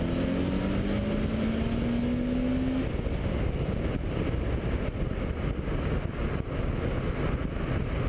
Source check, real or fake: real